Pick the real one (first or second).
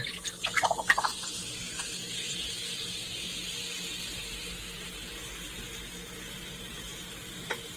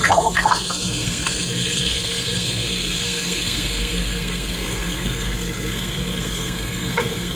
first